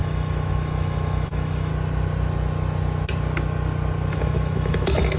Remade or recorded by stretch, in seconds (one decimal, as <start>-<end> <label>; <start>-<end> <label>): 0.0-1.7 remade; 1.7-4.1 recorded; 4.1-5.2 remade